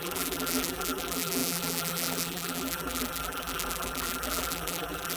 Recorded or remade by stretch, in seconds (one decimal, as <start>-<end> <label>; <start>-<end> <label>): 0.0-5.2 remade